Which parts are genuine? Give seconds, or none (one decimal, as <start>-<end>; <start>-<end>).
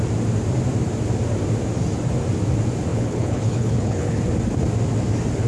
0.0-2.9; 4.2-5.5